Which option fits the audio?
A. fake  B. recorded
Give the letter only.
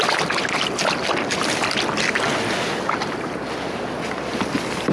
B